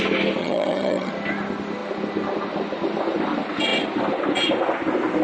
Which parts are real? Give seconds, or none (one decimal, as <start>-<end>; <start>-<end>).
0.0-0.4; 1.1-5.2